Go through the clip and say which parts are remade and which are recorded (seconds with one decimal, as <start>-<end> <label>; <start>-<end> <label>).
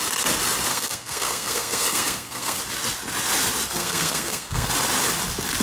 0.0-0.7 recorded; 0.7-2.6 remade; 2.6-3.8 recorded; 3.8-4.7 remade; 4.7-5.6 recorded